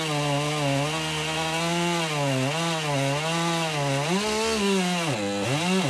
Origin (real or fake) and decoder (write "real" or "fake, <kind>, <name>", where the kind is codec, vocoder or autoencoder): real